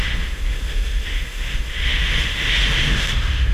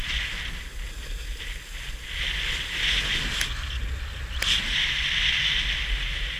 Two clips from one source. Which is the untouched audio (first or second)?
second